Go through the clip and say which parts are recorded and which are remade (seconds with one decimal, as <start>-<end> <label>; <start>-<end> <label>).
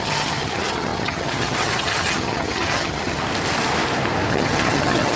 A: 0.0-3.2 remade; 3.2-4.3 recorded; 4.3-5.2 remade